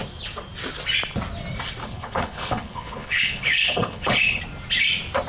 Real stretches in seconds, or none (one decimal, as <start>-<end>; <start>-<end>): 0.0-1.8; 4.4-5.3